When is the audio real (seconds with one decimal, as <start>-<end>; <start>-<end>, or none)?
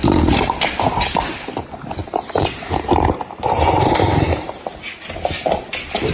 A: 1.6-2.0; 4.7-6.1